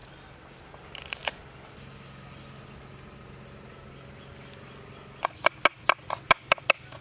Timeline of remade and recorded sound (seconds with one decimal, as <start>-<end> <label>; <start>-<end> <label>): 0.0-7.0 recorded